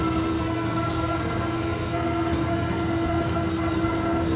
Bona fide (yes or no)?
no